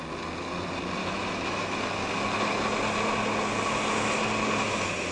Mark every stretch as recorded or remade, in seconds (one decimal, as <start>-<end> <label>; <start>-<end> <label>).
0.0-1.0 recorded; 1.0-1.8 remade; 1.8-5.1 recorded